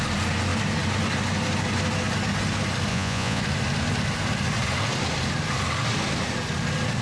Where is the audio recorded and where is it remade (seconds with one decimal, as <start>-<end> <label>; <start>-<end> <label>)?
0.0-2.9 recorded; 2.9-3.4 remade; 3.4-7.0 recorded